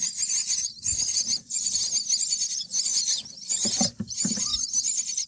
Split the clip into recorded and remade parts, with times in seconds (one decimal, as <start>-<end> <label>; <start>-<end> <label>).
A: 0.0-0.9 recorded; 0.9-1.7 remade; 1.7-5.3 recorded